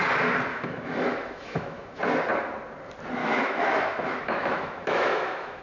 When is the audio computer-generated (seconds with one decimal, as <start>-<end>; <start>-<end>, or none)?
0.5-2.0; 3.2-5.6